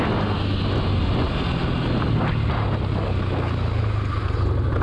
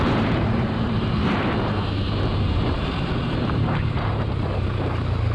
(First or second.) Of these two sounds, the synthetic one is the second